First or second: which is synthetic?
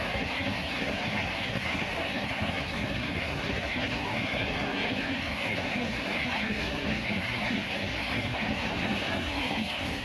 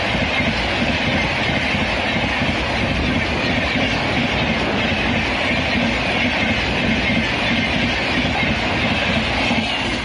first